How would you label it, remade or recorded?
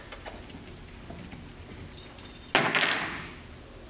recorded